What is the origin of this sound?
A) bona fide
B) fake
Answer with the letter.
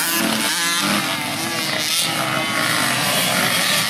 A